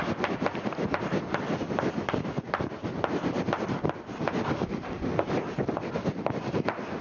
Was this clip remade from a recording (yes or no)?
no